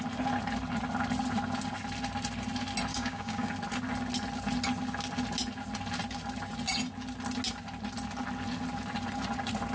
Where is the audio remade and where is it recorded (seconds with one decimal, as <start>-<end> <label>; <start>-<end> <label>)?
0.0-2.9 recorded; 2.9-3.5 remade; 3.5-9.7 recorded